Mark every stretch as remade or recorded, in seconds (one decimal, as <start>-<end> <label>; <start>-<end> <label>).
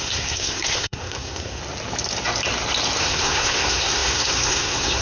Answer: 0.0-1.6 remade; 1.6-3.0 recorded; 3.0-5.0 remade